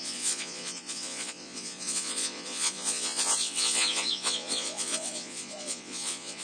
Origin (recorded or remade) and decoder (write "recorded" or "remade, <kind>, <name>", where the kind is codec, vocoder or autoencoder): remade, vocoder, Vocos